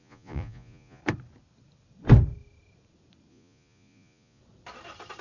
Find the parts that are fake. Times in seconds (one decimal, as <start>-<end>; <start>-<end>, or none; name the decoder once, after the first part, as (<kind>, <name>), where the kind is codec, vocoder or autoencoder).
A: 0.0-1.0 (vocoder, Vocos); 3.3-4.4